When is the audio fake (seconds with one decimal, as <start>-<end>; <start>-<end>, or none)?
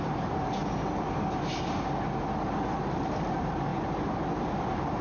0.0-0.6; 2.8-3.7